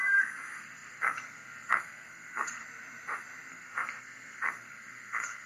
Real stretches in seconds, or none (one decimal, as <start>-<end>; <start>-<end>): 2.6-3.5